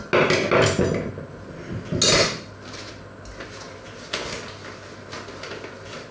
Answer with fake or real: real